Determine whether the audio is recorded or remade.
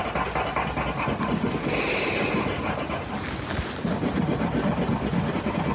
recorded